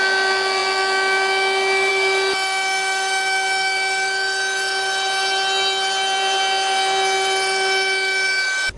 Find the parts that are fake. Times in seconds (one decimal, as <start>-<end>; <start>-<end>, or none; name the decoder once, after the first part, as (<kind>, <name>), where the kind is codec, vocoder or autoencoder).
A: none

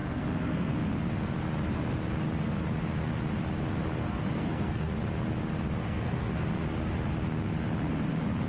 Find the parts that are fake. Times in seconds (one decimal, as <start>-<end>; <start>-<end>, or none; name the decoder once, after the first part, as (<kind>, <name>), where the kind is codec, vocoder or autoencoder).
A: 0.0-0.7 (codec, SNAC); 4.0-4.9; 5.8-6.3

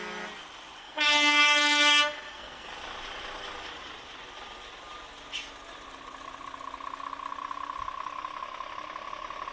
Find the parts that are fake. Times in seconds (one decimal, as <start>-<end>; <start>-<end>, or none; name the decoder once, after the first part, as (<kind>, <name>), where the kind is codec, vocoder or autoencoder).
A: 0.8-2.7 (codec, SNAC)

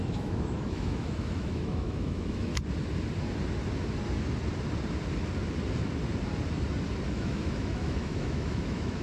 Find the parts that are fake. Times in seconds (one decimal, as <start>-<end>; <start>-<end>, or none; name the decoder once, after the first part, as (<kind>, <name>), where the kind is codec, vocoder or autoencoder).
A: 0.0-2.5 (autoencoder, DAC-VAE); 7.1-9.0

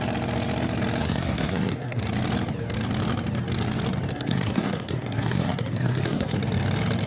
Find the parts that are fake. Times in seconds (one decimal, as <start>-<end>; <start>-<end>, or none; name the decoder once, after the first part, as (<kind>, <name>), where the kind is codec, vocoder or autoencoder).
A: 1.0-2.0 (codec, SNAC); 4.1-6.4

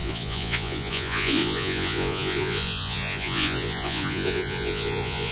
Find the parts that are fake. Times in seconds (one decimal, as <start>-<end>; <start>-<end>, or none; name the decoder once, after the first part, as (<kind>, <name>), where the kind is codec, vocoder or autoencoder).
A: 0.0-5.3 (vocoder, Vocos)